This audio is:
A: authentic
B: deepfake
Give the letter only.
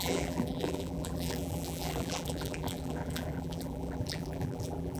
B